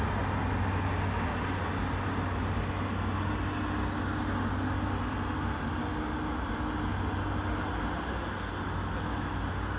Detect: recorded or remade recorded